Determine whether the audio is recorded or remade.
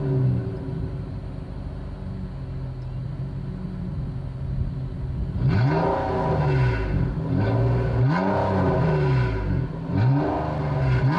recorded